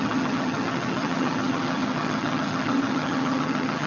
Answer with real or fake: fake